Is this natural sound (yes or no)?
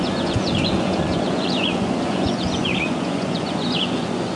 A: no